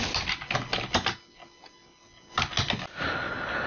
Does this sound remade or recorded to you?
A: recorded